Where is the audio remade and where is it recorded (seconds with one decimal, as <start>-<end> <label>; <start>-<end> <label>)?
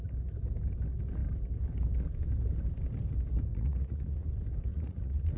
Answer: 0.0-3.5 recorded; 3.5-4.3 remade; 4.3-4.7 recorded; 4.7-5.4 remade